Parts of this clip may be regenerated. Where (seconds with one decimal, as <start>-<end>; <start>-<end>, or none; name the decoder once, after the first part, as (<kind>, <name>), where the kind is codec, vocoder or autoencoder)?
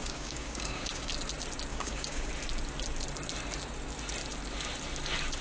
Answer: 0.0-1.1 (codec, DAC); 1.7-2.3